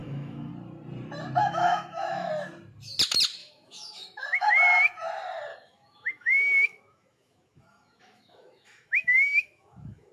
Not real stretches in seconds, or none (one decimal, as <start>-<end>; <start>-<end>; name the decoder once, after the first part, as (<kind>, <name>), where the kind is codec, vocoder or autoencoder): 0.0-0.5 (autoencoder, DAC-VAE); 1.4-2.3; 3.4-4.5; 5.5-10.1

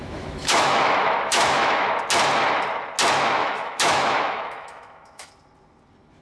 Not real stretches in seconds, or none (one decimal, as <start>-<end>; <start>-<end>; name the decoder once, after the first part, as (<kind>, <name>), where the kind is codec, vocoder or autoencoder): 0.0-1.9 (autoencoder, DAC-VAE); 3.4-5.3

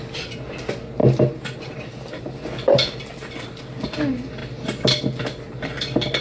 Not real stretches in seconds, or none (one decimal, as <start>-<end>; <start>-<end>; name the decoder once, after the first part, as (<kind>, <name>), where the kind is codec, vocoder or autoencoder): none